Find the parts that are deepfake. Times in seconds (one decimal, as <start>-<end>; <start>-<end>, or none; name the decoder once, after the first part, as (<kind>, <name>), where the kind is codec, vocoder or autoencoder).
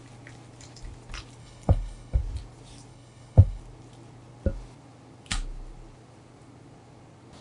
1.4-2.2 (codec, HILCodec); 2.9-3.6